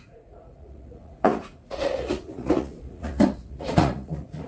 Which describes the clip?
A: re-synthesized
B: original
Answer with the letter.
A